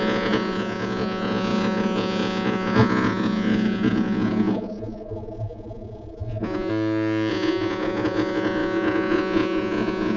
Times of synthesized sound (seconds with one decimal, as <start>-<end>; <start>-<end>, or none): 0.0-6.7; 7.3-10.2

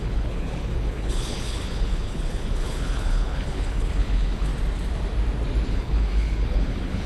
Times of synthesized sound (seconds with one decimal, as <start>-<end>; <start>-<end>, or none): 0.0-4.5; 5.7-7.1

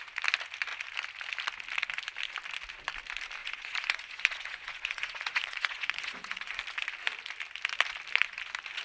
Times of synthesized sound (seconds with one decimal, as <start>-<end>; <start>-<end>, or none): 3.4-6.6

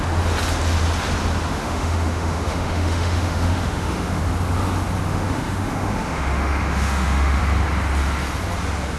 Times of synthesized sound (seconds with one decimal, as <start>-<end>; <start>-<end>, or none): 1.5-4.2; 5.1-7.4

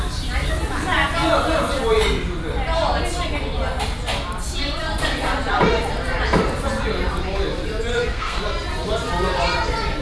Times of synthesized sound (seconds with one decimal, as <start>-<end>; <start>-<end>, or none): 7.9-8.4

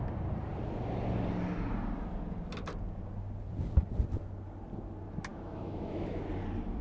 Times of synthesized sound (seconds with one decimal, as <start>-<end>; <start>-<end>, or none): 5.3-6.2

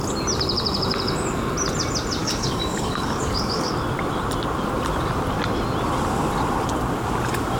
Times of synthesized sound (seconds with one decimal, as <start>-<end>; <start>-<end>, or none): 2.2-3.7